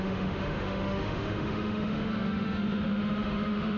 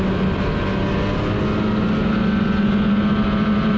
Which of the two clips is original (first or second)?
second